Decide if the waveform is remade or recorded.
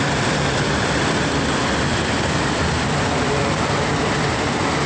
remade